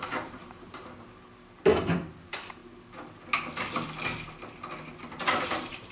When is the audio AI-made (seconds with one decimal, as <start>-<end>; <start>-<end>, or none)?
0.0-1.7; 2.2-2.6; 5.5-5.9